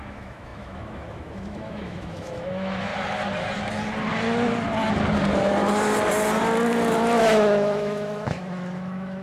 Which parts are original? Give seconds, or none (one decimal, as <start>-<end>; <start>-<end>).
2.9-7.2